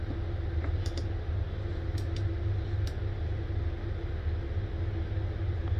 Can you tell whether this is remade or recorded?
recorded